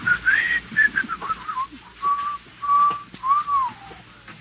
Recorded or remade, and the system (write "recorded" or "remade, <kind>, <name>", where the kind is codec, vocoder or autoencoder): recorded